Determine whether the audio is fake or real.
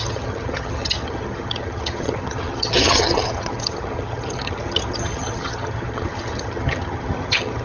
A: fake